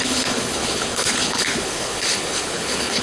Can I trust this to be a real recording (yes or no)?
no